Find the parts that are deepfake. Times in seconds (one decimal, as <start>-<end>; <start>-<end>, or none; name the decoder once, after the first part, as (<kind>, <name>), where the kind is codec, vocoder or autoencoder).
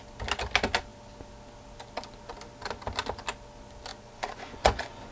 3.9-5.1 (vocoder, Vocos)